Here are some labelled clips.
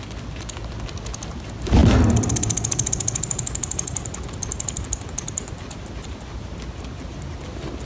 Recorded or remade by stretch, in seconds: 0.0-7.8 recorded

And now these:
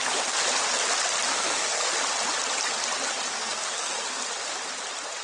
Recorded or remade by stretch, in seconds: 0.0-1.3 recorded; 1.3-1.9 remade; 1.9-3.3 recorded; 3.3-4.3 remade; 4.3-5.2 recorded

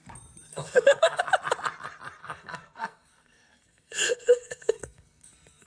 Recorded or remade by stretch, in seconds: 0.0-0.5 recorded; 0.5-1.2 remade; 1.2-2.2 recorded; 2.2-5.7 remade

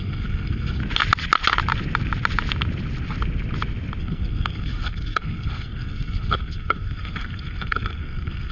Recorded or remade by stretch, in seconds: 0.0-0.8 remade; 0.8-4.0 recorded; 4.0-8.5 remade

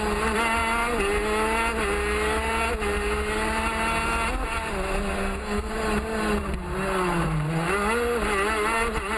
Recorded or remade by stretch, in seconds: 0.0-5.2 recorded; 5.2-5.7 remade; 5.7-9.2 recorded

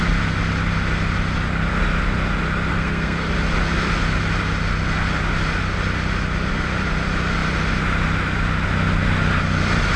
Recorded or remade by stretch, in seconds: 0.0-2.7 recorded; 2.7-3.3 remade; 3.3-10.0 recorded

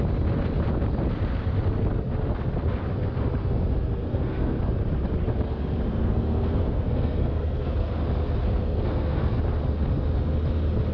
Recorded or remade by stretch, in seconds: 0.0-4.0 recorded; 4.0-4.6 remade; 4.6-5.9 recorded; 5.9-7.9 remade; 7.9-8.4 recorded; 8.4-9.4 remade; 9.4-10.9 recorded